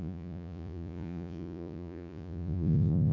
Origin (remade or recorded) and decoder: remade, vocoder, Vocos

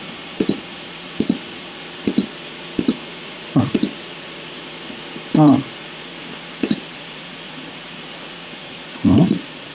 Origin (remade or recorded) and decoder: remade, vocoder, Vocos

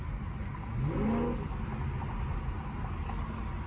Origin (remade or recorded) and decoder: recorded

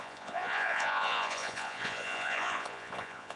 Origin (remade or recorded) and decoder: remade, vocoder, Vocos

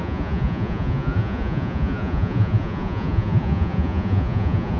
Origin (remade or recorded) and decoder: remade, vocoder, Vocos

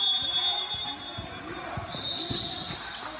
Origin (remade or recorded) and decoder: recorded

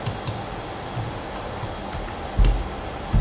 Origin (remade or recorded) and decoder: recorded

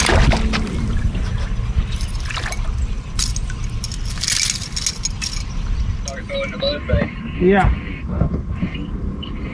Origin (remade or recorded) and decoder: recorded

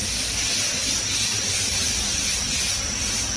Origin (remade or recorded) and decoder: recorded